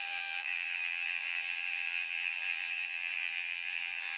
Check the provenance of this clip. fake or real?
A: fake